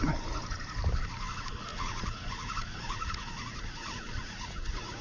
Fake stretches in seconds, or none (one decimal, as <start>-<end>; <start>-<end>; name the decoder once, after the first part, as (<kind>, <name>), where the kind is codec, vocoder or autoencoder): 1.7-5.0 (vocoder, Vocos)